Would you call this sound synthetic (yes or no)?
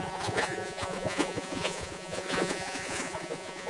yes